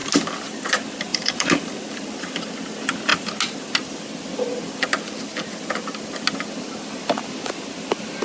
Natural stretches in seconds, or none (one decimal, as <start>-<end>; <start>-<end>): 0.0-1.1; 1.9-8.2